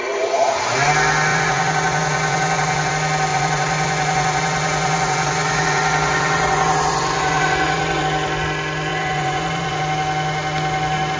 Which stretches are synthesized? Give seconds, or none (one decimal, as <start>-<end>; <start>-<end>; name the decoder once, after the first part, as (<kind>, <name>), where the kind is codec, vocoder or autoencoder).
1.3-2.9 (vocoder, Vocos); 3.3-8.0; 8.9-9.8